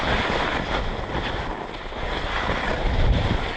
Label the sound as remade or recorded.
recorded